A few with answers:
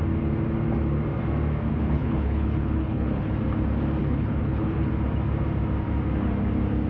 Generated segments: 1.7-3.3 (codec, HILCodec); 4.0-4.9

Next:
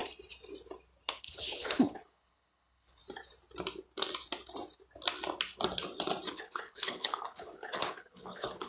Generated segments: 1.1-3.0 (codec, HILCodec); 6.3-8.7